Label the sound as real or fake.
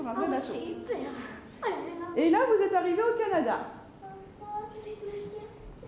real